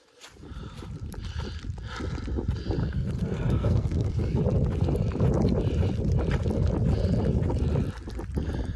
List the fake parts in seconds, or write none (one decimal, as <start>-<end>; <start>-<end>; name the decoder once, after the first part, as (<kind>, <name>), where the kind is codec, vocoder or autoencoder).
2.8-4.4 (codec, SNAC)